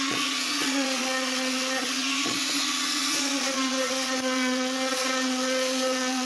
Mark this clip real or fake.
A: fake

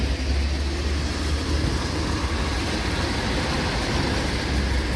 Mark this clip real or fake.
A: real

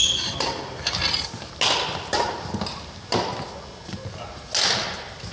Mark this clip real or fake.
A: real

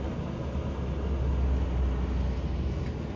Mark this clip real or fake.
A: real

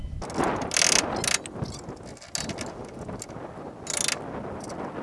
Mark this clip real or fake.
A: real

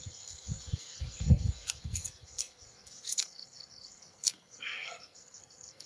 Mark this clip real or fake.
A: fake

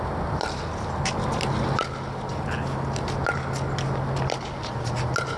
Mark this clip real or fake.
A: real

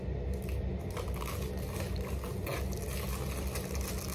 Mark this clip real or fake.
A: real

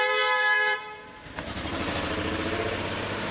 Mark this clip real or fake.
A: fake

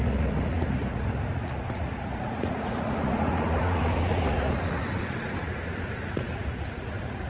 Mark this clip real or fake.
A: fake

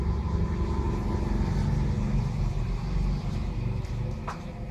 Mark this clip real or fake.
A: real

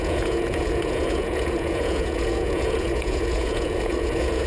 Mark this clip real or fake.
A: fake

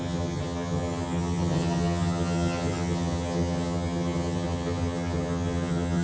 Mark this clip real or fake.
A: fake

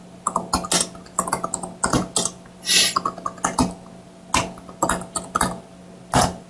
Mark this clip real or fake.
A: real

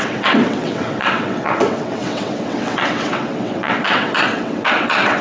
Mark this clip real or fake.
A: fake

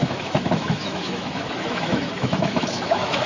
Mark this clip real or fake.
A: fake